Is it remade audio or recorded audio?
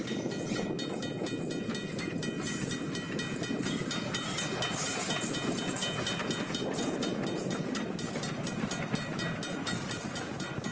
recorded